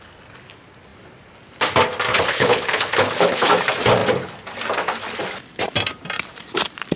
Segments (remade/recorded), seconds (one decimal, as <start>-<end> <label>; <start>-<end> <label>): 0.0-2.1 recorded; 2.1-3.5 remade; 3.5-7.0 recorded